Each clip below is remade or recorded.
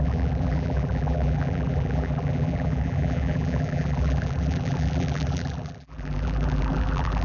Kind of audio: remade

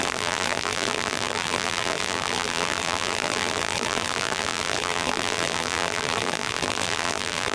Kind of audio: remade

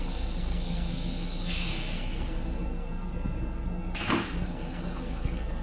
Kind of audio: remade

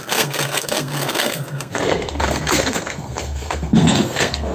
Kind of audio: remade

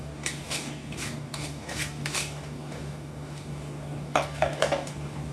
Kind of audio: remade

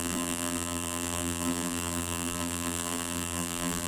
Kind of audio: remade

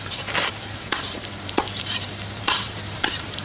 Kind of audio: remade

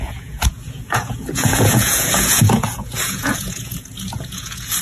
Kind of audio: remade